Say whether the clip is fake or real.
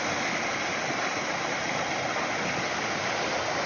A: real